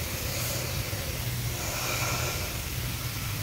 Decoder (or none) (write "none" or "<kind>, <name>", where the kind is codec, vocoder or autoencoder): none